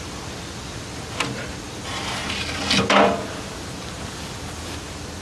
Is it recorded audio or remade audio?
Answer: recorded